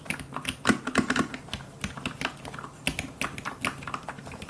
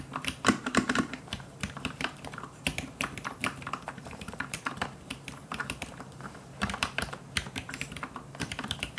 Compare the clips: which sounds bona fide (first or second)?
first